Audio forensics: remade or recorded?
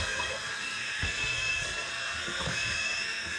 remade